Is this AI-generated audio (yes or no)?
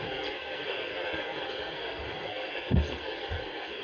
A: yes